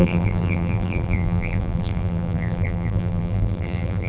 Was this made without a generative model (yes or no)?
no